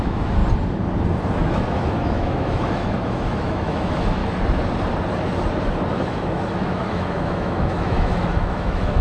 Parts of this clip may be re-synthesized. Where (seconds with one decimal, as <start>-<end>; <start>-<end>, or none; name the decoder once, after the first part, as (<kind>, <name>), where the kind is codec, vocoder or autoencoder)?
0.0-0.4 (autoencoder, DAC-VAE); 1.4-4.2; 5.9-9.0